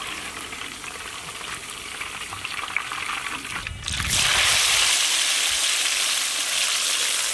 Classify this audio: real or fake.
real